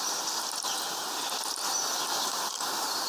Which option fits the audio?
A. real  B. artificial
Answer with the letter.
A